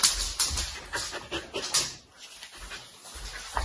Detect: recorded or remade recorded